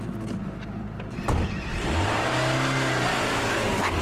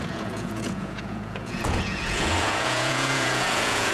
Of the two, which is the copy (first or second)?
second